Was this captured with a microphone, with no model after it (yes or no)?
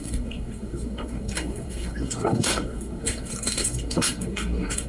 no